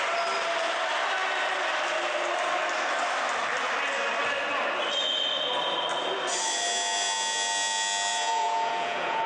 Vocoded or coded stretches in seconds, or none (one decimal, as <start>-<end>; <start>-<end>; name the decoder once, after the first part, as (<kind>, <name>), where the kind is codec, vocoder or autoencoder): 8.1-9.3 (vocoder, Vocos)